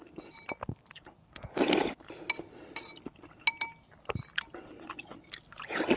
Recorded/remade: recorded